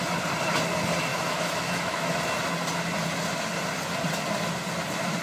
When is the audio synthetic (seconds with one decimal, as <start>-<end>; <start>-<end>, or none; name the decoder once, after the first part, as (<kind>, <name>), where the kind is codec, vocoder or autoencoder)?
1.1-2.2 (autoencoder, DAC-VAE)